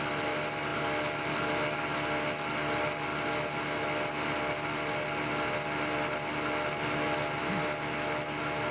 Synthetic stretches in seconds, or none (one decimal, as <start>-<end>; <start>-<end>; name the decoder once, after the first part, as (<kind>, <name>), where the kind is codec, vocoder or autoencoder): none